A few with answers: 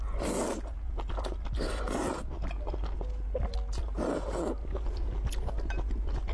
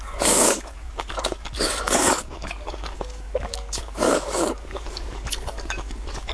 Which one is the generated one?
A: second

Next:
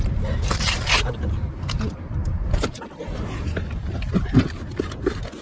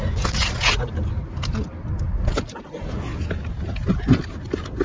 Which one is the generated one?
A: first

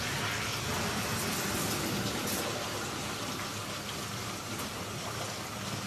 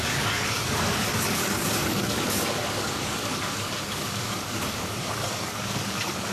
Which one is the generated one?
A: second